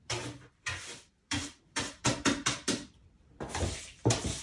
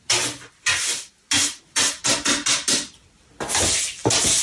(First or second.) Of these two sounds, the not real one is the first